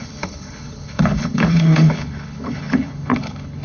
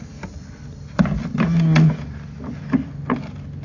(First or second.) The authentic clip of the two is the second